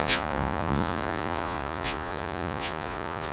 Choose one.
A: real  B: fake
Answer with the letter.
B